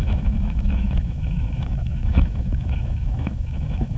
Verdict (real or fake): fake